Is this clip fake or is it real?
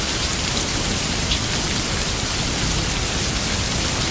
real